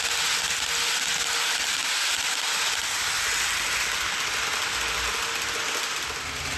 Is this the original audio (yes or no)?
yes